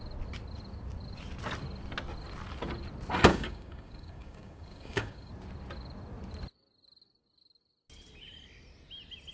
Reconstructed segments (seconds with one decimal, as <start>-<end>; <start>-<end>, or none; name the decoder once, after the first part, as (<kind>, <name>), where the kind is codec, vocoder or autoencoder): 3.3-5.3 (codec, DAC)

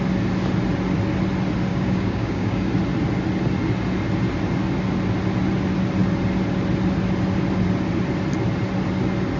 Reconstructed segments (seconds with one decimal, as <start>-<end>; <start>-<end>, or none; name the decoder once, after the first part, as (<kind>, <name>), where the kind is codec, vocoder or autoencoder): 1.7-2.7 (codec, DAC)

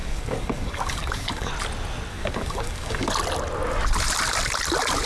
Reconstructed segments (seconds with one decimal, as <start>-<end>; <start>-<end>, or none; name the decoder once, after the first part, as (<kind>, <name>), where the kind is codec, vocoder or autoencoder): 0.0-1.5 (codec, DAC); 2.1-3.1

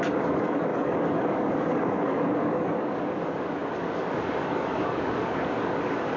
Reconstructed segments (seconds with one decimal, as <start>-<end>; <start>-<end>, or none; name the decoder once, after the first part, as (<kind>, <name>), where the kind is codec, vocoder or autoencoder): 0.0-6.2 (codec, DAC)

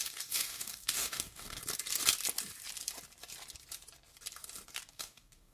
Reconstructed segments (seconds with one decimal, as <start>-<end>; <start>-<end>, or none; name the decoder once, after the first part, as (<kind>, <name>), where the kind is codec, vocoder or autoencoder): 0.0-1.6 (codec, DAC); 4.9-5.5

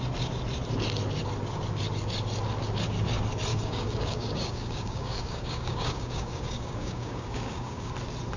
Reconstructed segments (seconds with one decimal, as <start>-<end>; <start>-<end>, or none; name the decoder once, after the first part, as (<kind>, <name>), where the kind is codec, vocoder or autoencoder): 3.5-7.9 (codec, DAC)